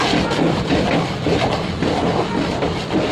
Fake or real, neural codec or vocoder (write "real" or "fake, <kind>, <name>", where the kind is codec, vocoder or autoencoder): real